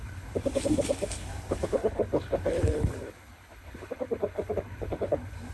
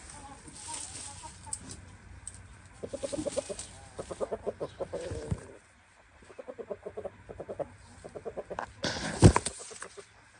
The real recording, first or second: second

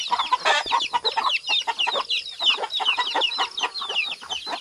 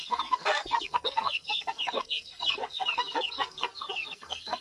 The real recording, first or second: first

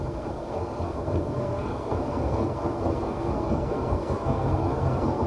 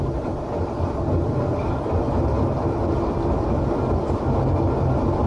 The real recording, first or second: second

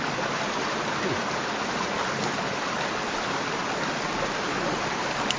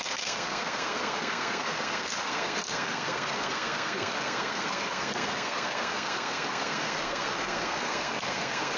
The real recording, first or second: first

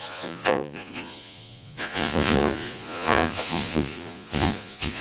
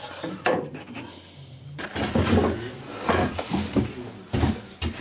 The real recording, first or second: second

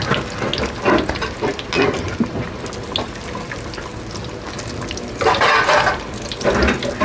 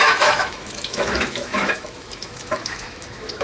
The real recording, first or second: first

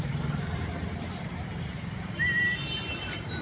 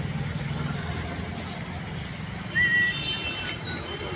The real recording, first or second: second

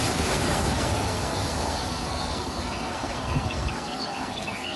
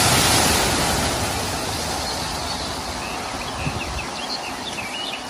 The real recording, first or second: second